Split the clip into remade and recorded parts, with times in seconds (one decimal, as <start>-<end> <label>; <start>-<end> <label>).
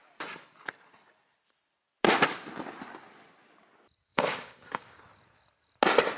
0.0-4.1 recorded; 4.1-5.0 remade; 5.0-6.2 recorded